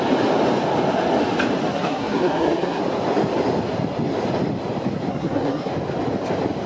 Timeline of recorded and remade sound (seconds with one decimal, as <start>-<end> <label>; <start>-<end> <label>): 0.0-1.7 recorded; 1.7-2.8 remade; 2.8-5.1 recorded; 5.1-5.7 remade; 5.7-6.7 recorded